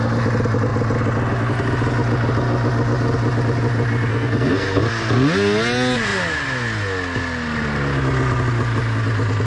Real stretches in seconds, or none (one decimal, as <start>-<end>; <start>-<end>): 0.0-4.1; 4.8-9.5